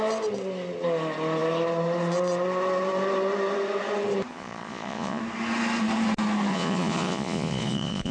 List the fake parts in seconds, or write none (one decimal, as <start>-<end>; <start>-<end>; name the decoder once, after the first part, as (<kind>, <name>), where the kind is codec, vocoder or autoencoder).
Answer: 4.3-5.2 (vocoder, Vocos); 6.5-8.1